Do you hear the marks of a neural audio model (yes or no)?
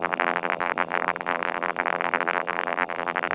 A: yes